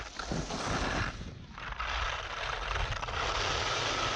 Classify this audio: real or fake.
real